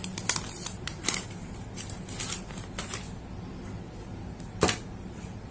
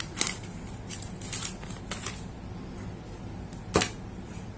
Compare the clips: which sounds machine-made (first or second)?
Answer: first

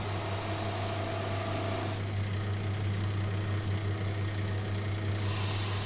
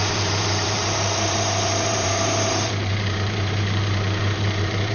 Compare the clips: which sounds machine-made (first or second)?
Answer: second